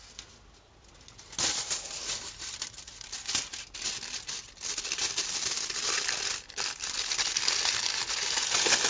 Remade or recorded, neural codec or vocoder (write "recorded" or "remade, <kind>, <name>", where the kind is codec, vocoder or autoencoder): recorded